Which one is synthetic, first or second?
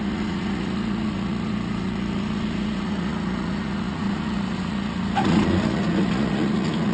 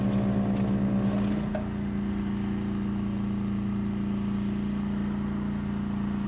first